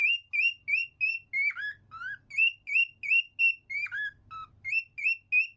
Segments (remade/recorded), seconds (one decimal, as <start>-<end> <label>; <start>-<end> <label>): 0.0-5.6 recorded